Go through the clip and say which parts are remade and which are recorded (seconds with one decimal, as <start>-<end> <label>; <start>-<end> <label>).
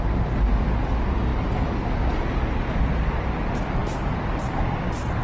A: 0.0-5.2 recorded